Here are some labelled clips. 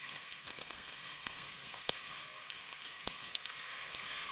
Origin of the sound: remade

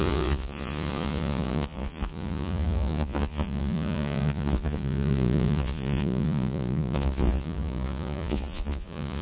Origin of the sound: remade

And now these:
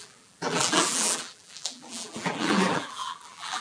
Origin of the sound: remade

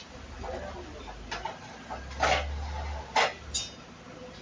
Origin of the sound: recorded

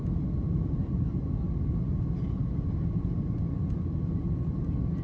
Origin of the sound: recorded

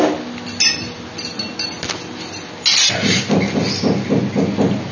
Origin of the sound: recorded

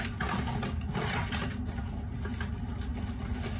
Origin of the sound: recorded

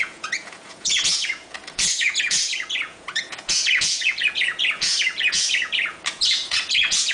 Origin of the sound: remade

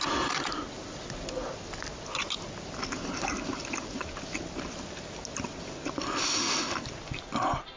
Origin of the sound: recorded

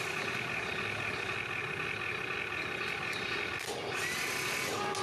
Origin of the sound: recorded